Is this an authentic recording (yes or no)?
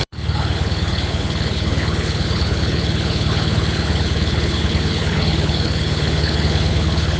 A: no